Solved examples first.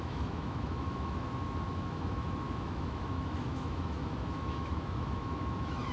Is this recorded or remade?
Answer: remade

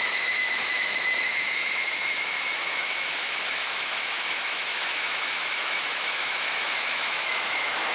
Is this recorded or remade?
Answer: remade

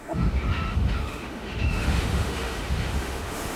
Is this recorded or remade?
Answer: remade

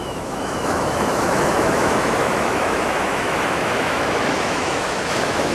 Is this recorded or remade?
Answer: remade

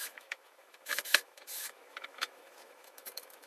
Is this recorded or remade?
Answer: remade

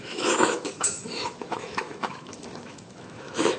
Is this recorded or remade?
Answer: remade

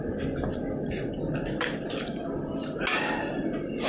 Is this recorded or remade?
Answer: recorded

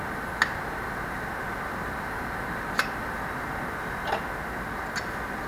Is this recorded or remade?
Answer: recorded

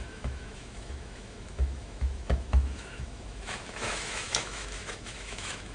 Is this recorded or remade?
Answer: remade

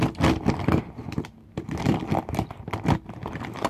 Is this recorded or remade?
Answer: recorded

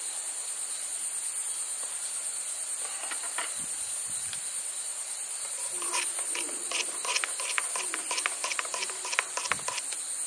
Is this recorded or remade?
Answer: recorded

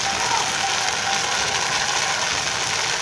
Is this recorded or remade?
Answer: recorded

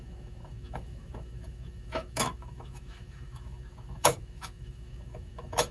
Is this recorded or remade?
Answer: remade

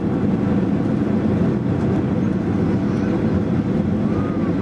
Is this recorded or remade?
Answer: recorded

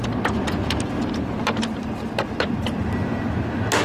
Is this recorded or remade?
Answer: recorded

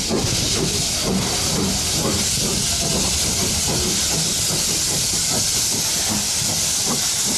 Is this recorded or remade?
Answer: recorded